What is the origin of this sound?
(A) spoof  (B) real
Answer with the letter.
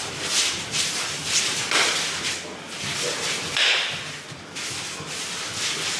B